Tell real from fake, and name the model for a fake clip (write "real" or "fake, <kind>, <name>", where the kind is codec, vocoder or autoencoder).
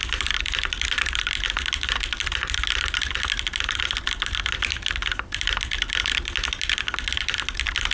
real